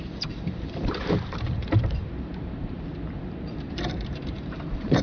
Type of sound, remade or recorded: remade